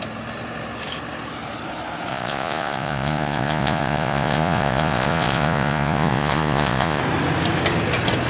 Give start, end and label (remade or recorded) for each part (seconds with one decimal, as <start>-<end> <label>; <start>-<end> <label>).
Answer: 0.0-2.1 recorded; 2.1-7.0 remade; 7.0-8.3 recorded